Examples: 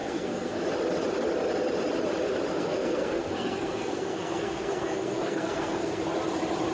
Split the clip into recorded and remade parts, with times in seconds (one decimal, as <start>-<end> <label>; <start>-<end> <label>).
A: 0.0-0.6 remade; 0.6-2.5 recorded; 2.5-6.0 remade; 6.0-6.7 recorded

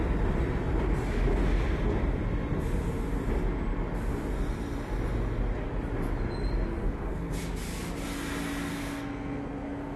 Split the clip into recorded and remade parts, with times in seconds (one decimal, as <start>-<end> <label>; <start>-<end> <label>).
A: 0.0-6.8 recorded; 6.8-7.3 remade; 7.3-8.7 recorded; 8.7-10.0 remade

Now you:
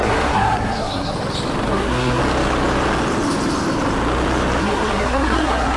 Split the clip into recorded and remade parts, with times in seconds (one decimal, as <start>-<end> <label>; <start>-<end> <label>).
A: 0.0-1.1 remade; 1.1-1.7 recorded; 1.7-2.2 remade; 2.2-4.6 recorded; 4.6-5.8 remade